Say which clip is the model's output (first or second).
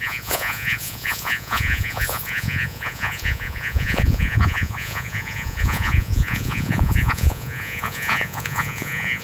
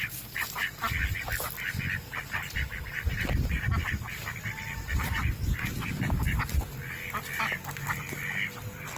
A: first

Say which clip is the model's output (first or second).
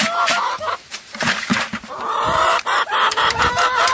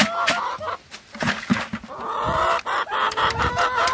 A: first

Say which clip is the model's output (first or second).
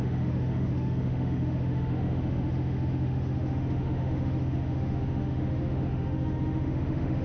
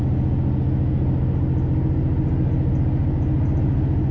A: first